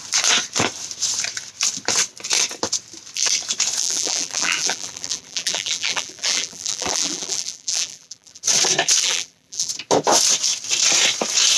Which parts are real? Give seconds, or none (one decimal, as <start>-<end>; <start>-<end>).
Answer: 0.0-3.8; 8.4-9.0; 9.7-11.6

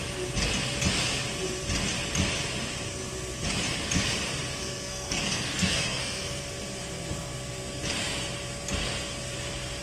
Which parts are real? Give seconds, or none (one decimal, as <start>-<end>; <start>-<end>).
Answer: 0.0-4.6; 6.4-9.8

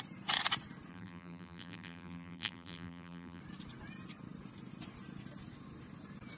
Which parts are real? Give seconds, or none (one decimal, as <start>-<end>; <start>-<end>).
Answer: 0.0-0.9; 3.4-6.4